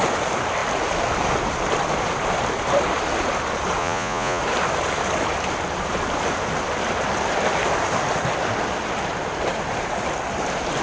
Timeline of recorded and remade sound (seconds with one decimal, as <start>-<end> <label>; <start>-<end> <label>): 0.0-3.8 recorded; 3.8-4.4 remade; 4.4-10.8 recorded